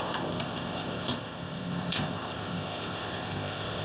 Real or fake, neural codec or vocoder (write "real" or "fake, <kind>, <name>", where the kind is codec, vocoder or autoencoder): fake, codec, ZipCodec